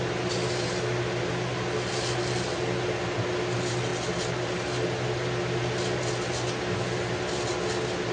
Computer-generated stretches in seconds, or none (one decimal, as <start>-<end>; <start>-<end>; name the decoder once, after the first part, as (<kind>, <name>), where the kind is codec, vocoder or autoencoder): none